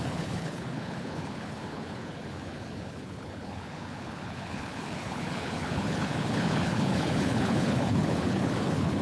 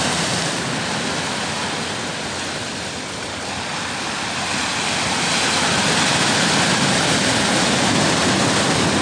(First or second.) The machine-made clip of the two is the first